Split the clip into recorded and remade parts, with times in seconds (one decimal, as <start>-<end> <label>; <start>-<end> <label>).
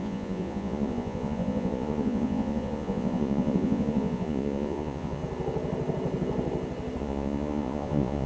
0.0-5.2 remade; 5.2-7.0 recorded; 7.0-8.3 remade